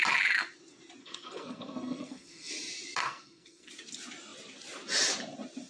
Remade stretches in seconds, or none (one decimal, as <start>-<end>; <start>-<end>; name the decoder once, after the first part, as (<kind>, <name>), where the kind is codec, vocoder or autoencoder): 1.0-2.5 (codec, SNAC); 3.0-3.7